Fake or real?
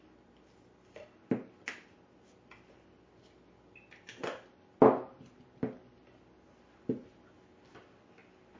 real